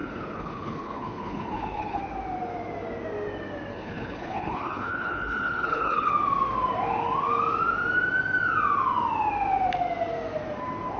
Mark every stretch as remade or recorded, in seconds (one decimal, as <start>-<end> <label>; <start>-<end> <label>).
0.0-2.0 remade; 2.0-3.7 recorded; 3.7-6.1 remade; 6.1-11.0 recorded